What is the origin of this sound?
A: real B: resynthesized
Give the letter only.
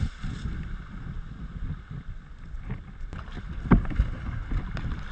A